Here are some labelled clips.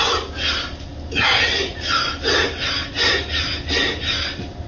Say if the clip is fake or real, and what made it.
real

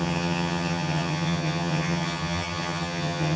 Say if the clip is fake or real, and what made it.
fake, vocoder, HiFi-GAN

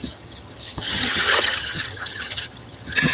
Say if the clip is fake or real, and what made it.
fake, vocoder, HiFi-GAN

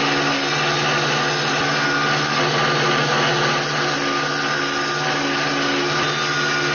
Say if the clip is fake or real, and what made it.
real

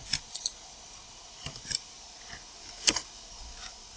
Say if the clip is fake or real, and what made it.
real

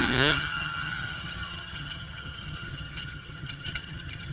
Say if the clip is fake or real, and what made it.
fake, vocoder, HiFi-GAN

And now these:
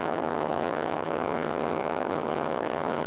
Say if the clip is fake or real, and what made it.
fake, vocoder, HiFi-GAN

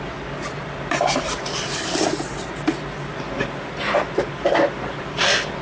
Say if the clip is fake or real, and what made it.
real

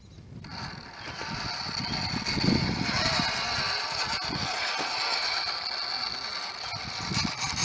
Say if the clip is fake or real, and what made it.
real